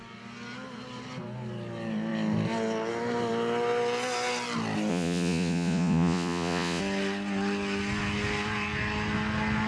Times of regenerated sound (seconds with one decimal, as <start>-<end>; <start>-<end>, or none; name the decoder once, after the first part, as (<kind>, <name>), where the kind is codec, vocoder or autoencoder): 4.9-6.8 (vocoder, Vocos)